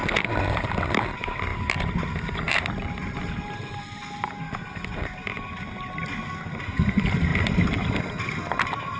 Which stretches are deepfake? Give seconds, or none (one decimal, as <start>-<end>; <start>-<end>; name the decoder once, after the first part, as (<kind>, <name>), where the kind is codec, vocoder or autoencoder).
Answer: none

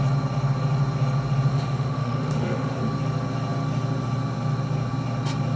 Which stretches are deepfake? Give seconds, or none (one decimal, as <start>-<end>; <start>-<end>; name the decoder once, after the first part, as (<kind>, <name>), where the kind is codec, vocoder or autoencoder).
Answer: 1.5-2.8 (autoencoder, DAC-VAE)

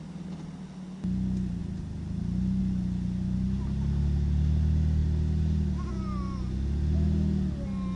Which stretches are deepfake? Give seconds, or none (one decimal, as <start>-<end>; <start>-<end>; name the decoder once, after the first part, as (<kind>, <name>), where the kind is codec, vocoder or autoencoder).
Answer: none

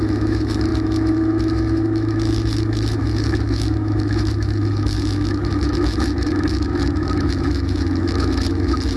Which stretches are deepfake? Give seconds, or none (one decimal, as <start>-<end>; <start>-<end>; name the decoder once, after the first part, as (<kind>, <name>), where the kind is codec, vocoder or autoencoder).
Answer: 0.0-9.0 (autoencoder, DAC-VAE)

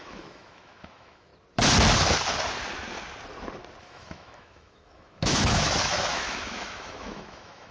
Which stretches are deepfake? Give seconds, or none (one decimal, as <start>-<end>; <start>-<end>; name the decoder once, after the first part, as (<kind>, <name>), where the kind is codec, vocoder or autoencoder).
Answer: 0.0-1.3 (autoencoder, DAC-VAE); 3.8-7.7

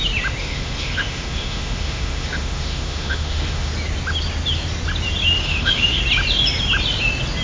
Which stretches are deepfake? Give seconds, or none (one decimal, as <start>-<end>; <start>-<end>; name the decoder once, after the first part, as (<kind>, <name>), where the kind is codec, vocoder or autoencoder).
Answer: 0.4-3.7 (autoencoder, DAC-VAE); 5.4-6.0

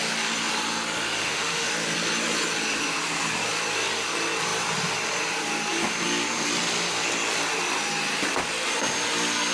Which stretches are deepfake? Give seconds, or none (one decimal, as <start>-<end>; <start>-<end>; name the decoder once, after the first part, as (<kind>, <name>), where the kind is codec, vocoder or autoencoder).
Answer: 1.2-1.7 (autoencoder, DAC-VAE)